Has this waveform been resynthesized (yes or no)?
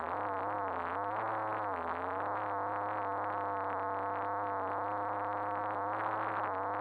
no